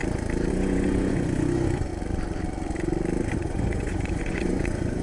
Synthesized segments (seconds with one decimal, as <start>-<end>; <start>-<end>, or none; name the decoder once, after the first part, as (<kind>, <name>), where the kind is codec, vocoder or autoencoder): 0.5-1.9 (vocoder, Vocos); 3.3-5.0